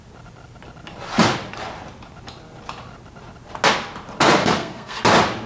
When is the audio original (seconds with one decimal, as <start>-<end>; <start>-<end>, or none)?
0.0-4.4; 5.0-5.5